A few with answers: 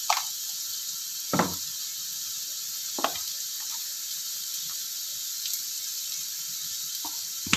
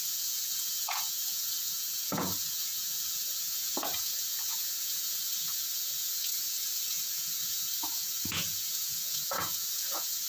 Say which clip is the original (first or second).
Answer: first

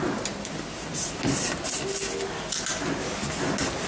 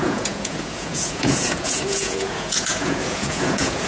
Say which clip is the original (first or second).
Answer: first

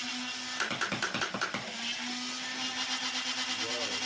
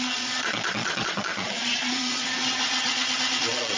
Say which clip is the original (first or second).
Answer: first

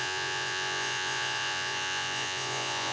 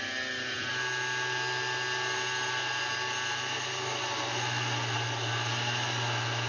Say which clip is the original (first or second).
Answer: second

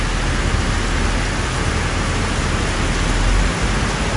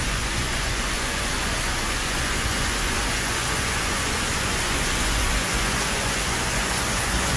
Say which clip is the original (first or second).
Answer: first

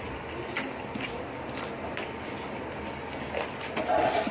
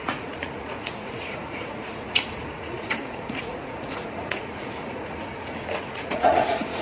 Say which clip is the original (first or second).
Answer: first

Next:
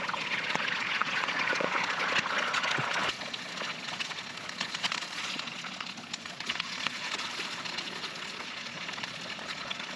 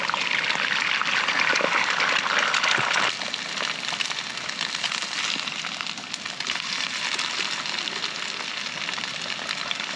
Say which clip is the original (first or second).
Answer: second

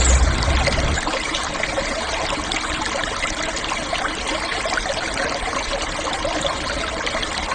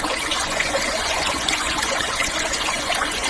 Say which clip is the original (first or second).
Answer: first